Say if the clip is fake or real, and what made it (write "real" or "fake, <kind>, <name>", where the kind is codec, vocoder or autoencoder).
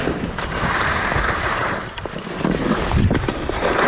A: real